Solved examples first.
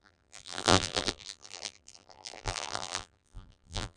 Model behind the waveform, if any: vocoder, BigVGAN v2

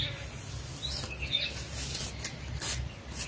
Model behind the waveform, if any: none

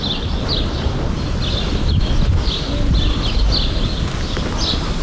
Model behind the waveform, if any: none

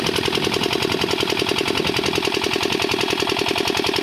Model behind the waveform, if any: none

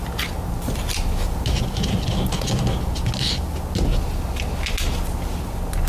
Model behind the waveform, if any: none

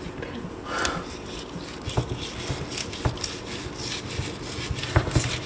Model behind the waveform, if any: none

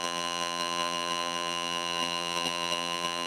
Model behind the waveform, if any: vocoder, BigVGAN v2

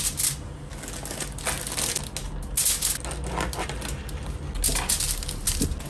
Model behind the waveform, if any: none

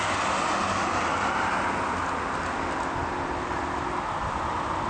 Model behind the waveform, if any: none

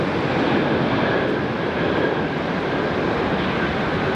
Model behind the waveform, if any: none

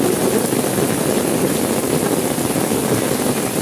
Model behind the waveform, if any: none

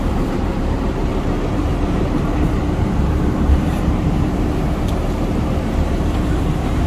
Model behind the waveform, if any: vocoder, BigVGAN v2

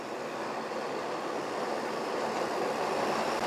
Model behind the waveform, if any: none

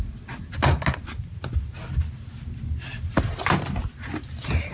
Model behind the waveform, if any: none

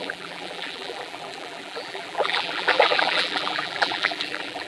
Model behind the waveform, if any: vocoder, BigVGAN v2